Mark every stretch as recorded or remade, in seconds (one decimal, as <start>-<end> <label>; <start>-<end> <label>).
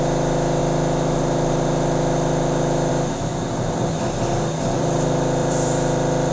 0.0-5.4 recorded; 5.4-6.3 remade